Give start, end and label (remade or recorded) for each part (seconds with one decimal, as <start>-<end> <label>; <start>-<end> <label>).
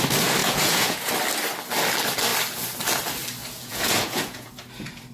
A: 0.0-0.4 recorded; 0.4-1.1 remade; 1.1-3.4 recorded; 3.4-4.5 remade; 4.5-5.1 recorded